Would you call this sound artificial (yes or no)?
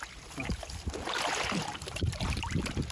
yes